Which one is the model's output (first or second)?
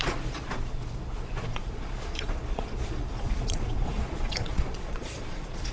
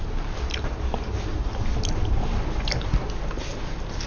first